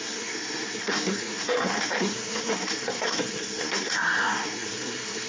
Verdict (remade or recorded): remade